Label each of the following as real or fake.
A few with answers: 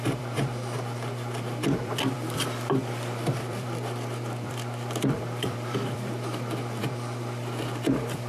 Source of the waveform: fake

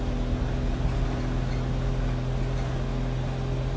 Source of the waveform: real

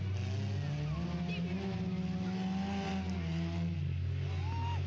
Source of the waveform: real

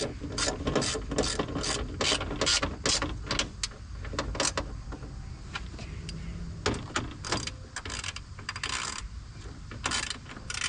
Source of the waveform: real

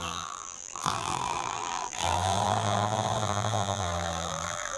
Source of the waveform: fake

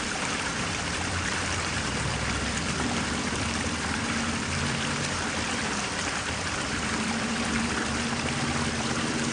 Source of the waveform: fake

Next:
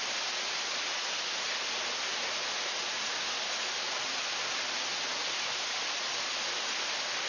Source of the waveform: real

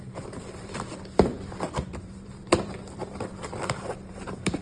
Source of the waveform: fake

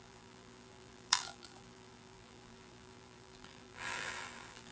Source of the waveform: fake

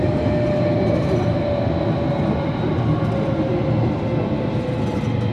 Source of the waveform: real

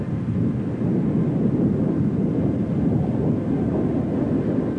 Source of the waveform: real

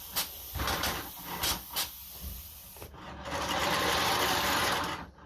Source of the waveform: real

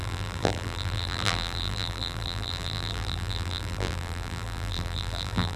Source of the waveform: fake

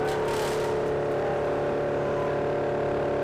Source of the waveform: real